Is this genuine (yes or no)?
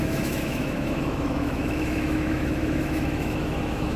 no